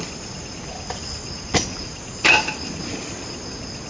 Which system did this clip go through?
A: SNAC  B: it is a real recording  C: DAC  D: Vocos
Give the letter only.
B